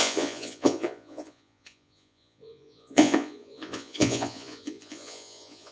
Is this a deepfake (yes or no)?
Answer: yes